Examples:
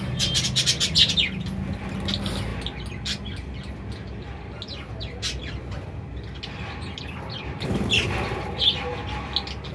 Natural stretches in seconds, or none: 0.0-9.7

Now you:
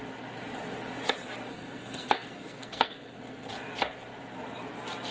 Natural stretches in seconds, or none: 0.0-1.5; 3.5-5.1

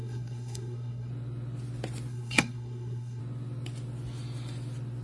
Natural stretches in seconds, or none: 1.1-2.1; 3.2-5.0

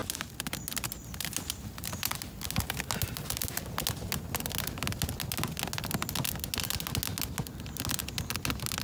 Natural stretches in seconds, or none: 0.0-8.8

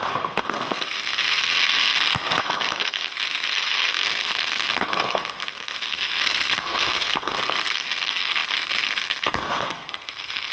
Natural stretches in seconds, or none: none

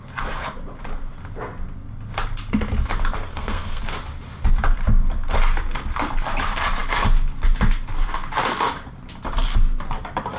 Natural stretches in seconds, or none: 0.0-3.3; 3.8-10.4

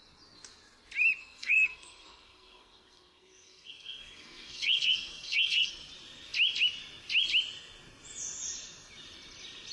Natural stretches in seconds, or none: 0.0-1.2; 5.7-9.7

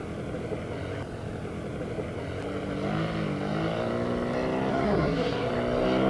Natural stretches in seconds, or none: 0.0-4.7; 5.5-6.1